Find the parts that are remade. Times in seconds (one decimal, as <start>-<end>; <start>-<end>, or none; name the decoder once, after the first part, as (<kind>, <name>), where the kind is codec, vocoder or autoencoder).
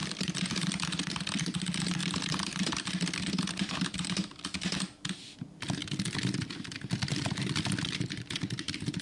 0.0-5.8 (vocoder, BigVGAN v2); 6.5-9.0